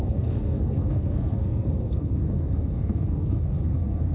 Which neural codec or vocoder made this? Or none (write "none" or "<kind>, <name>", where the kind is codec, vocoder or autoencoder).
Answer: codec, SNAC